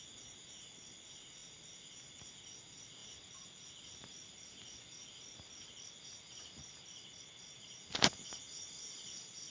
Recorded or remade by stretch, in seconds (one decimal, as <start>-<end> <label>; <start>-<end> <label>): 0.0-9.5 recorded